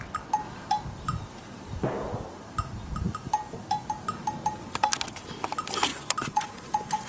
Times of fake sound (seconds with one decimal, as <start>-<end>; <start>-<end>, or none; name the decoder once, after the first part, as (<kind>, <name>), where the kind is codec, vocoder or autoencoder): 5.9-7.1 (vocoder, Vocos)